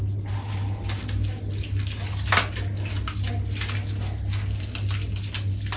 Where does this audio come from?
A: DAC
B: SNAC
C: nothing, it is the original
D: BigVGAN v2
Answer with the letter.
C